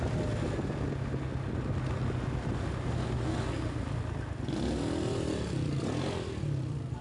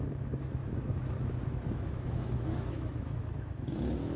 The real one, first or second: first